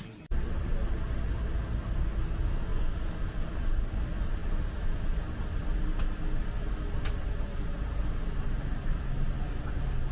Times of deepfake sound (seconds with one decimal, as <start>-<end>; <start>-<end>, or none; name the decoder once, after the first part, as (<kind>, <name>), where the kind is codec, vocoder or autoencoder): none